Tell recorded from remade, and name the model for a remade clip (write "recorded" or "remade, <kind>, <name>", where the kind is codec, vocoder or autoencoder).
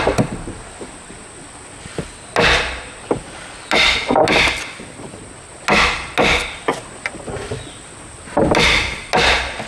recorded